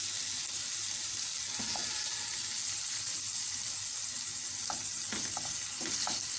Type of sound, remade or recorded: recorded